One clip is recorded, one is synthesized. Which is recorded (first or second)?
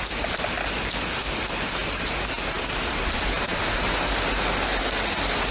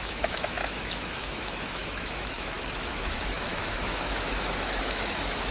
first